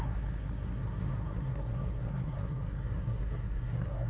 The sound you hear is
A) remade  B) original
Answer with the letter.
A